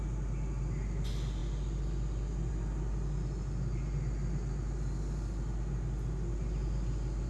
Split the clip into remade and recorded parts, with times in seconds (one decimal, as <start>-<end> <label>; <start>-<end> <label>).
0.0-7.3 recorded